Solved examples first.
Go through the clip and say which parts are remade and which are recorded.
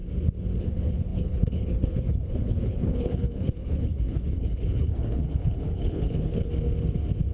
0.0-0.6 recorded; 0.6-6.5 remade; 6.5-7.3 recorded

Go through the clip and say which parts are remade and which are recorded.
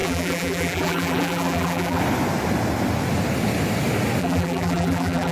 0.0-2.0 remade; 2.0-4.2 recorded; 4.2-5.3 remade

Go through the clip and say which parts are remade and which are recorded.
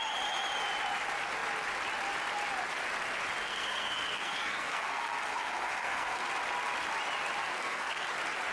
0.0-3.4 recorded; 3.4-6.3 remade; 6.3-7.4 recorded; 7.4-8.1 remade; 8.1-8.5 recorded